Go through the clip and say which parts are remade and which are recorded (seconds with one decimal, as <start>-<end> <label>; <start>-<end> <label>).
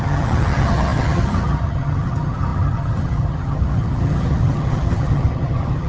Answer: 0.0-5.9 remade